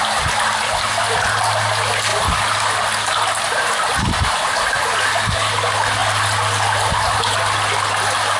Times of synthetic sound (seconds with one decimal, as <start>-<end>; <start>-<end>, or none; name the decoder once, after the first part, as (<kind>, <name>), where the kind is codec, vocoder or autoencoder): none